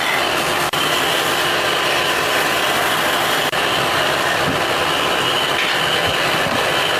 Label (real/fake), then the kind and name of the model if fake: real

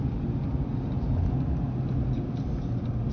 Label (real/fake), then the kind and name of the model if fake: real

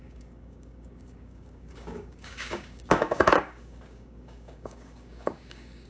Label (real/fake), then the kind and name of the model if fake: fake, codec, DAC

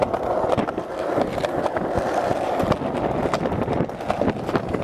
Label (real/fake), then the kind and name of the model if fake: real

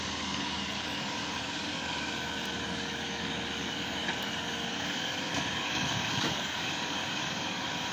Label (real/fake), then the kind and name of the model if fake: fake, codec, DAC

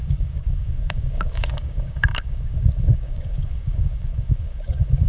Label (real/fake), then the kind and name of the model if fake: fake, codec, DAC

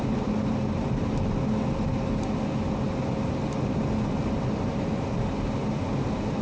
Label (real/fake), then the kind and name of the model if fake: real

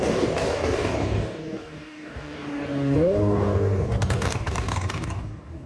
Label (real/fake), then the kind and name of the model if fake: fake, codec, DAC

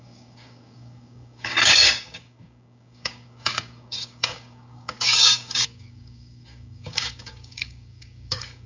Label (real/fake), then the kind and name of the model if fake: fake, codec, DAC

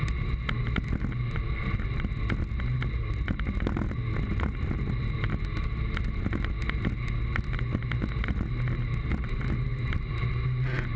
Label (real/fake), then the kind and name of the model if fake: real